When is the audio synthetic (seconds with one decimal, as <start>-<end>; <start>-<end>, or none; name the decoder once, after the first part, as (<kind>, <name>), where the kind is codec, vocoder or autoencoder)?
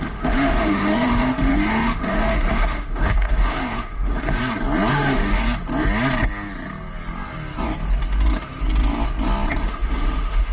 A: 0.0-4.4 (autoencoder, DAC-VAE); 4.9-5.4; 9.6-10.5